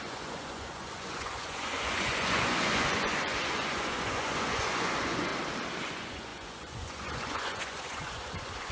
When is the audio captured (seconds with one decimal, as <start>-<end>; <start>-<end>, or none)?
5.3-5.8